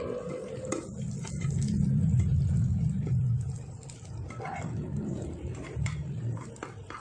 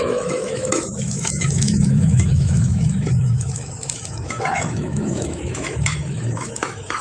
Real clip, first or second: first